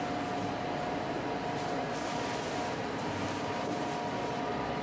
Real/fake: real